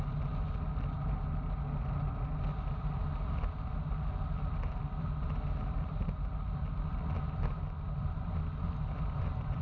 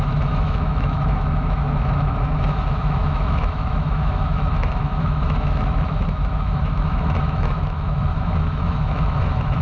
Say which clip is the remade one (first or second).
second